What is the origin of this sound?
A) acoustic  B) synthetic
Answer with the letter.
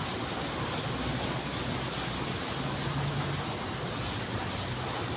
A